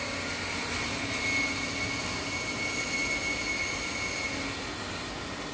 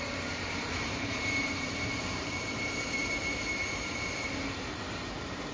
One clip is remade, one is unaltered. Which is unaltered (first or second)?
first